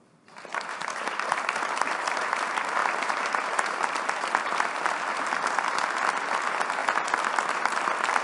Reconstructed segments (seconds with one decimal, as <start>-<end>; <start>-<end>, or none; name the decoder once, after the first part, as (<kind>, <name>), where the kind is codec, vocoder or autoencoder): 0.5-2.4 (vocoder, BigVGAN v2); 2.8-4.9

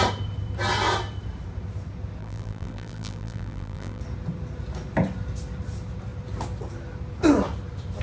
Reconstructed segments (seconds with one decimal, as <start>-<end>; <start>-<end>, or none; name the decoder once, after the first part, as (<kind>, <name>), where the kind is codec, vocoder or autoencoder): 2.2-4.0 (vocoder, BigVGAN v2)

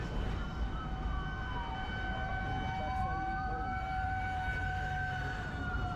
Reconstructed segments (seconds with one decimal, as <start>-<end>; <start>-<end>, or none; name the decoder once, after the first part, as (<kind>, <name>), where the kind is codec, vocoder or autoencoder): 0.0-2.3 (vocoder, BigVGAN v2); 3.0-4.5; 5.2-6.0

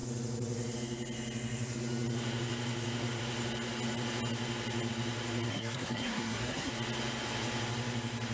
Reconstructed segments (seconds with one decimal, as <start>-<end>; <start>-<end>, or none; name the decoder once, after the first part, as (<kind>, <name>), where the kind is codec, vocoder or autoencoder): 5.5-6.7 (codec, SNAC)

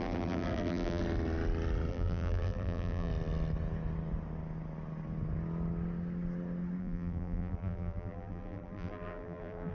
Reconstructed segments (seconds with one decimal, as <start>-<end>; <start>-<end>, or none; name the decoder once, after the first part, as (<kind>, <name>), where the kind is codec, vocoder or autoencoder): 0.0-1.0 (vocoder, BigVGAN v2); 1.9-3.1; 6.8-9.7